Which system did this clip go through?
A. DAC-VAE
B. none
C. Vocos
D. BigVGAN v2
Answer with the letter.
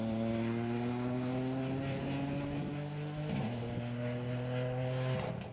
B